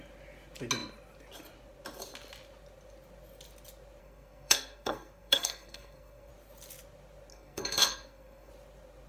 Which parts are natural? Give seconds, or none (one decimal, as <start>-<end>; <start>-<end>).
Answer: 0.0-4.0; 6.3-7.3; 8.5-9.1